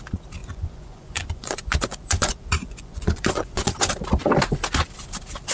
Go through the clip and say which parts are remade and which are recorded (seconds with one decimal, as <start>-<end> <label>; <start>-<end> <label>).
0.0-0.4 recorded; 0.4-3.7 remade; 3.7-5.5 recorded